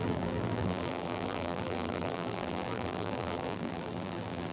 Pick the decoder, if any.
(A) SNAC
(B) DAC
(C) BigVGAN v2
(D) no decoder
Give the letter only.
C